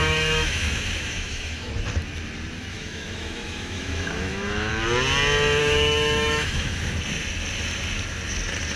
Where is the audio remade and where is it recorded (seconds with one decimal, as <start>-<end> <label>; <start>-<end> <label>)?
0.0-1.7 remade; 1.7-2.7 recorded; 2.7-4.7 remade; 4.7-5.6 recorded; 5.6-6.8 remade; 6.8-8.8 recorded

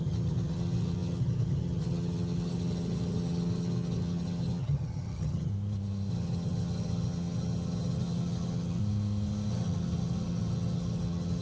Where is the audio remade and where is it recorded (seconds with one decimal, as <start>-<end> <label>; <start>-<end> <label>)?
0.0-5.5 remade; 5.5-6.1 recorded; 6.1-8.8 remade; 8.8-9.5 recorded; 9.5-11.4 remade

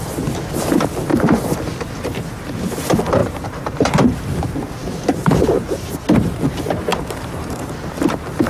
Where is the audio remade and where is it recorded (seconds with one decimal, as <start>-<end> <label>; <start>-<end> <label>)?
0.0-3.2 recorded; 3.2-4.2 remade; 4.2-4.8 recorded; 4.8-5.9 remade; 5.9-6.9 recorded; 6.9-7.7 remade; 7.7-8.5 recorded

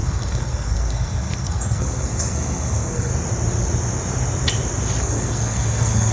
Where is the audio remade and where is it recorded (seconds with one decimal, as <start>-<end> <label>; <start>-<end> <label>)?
0.0-3.1 remade; 3.1-5.0 recorded; 5.0-6.1 remade